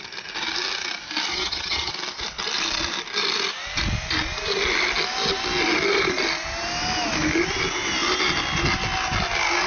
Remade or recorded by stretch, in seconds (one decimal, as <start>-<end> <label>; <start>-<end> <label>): 0.0-1.3 recorded; 1.3-1.9 remade; 1.9-9.7 recorded